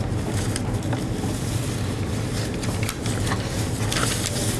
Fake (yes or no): no